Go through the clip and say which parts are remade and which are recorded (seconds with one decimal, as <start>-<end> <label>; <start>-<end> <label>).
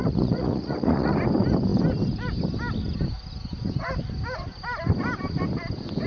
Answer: 0.0-1.1 remade; 1.1-6.1 recorded